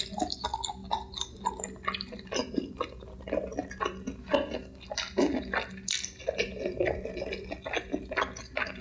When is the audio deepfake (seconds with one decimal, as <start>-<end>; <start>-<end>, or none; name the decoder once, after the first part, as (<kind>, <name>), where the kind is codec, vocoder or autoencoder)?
none